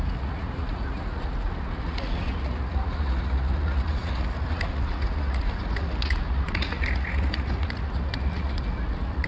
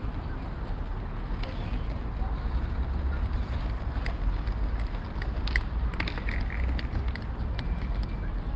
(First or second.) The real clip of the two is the second